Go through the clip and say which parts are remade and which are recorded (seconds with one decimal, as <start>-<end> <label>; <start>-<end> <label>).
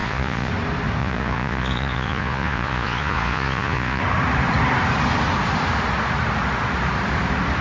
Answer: 0.0-0.5 remade; 0.5-1.0 recorded; 1.0-4.0 remade; 4.0-7.6 recorded